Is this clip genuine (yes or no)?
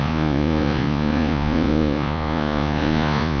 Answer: no